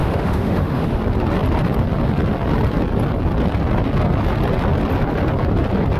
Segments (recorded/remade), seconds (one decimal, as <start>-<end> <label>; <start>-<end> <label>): 0.0-1.0 remade; 1.0-6.0 recorded